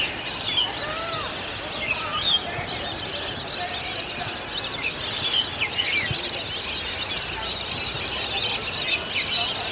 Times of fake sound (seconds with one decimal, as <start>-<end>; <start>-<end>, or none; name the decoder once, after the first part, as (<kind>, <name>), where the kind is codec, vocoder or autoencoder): none